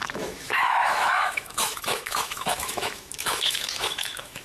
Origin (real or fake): fake